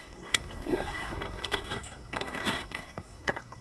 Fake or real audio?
fake